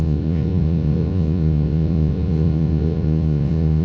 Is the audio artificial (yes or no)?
yes